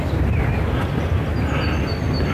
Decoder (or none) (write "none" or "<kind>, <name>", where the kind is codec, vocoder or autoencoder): none